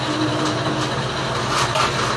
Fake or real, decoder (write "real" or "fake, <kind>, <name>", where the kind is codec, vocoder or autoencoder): real